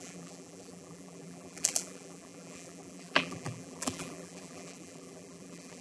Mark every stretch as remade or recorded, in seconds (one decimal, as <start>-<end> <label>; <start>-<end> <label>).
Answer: 0.0-5.8 remade